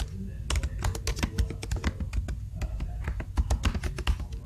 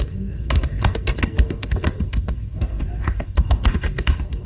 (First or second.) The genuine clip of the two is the first